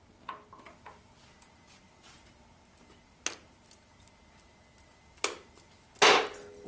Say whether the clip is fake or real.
real